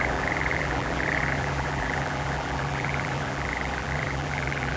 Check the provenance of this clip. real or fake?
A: fake